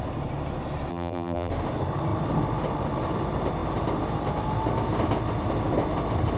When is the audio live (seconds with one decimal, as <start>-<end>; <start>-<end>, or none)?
0.0-0.9; 1.5-6.4